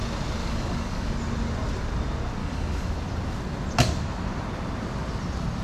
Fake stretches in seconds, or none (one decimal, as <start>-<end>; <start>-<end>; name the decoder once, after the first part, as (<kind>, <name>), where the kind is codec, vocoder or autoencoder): 0.4-1.1 (codec, DAC); 2.4-2.9